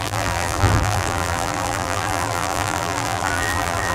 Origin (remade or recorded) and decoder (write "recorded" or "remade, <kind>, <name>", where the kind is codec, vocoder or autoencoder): remade, vocoder, BigVGAN v2